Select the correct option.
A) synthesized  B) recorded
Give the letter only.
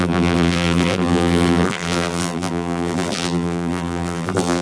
A